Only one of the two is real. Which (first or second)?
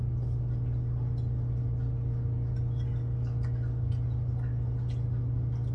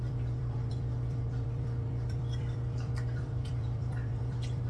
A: first